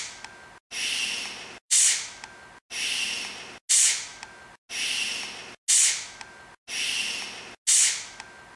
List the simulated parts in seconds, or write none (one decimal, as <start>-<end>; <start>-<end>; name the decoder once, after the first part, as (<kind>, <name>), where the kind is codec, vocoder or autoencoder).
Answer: none